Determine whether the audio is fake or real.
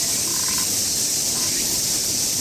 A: real